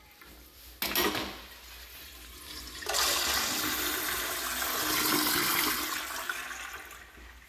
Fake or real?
real